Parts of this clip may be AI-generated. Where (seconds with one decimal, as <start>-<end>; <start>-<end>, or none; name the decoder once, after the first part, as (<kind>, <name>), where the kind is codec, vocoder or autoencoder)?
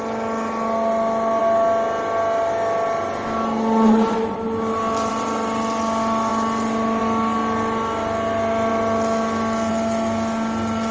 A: none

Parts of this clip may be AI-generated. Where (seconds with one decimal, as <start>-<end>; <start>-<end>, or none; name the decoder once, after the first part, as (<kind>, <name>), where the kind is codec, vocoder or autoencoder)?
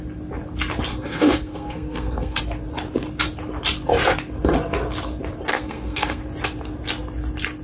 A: 0.9-2.4 (codec, SNAC); 5.5-6.2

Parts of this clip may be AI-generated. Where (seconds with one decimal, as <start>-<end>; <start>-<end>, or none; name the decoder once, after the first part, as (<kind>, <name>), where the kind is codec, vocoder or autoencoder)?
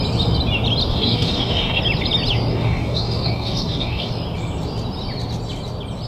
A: 0.9-1.8 (codec, DAC); 2.5-4.1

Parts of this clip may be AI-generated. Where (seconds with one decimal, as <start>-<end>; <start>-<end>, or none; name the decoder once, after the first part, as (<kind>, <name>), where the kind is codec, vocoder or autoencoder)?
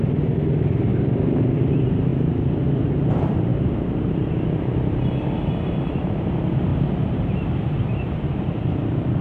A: 0.0-0.9 (vocoder, BigVGAN v2); 1.7-9.2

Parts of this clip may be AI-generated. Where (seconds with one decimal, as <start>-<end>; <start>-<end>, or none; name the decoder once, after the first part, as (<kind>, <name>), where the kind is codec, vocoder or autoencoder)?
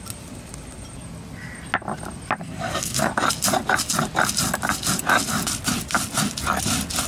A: 2.4-3.1 (codec, SNAC)